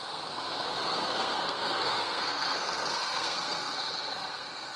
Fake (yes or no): yes